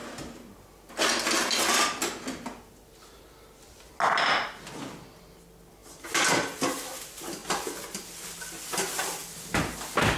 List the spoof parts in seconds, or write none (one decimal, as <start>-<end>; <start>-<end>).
none